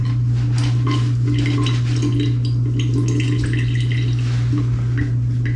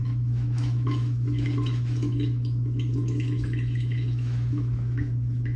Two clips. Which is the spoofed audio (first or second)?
second